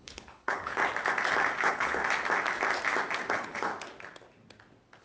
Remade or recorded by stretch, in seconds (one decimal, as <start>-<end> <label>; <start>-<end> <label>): 0.0-0.8 remade; 0.8-1.6 recorded; 1.6-2.0 remade; 2.0-3.3 recorded; 3.3-3.7 remade; 3.7-5.0 recorded